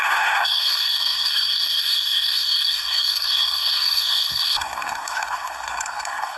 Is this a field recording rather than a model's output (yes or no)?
no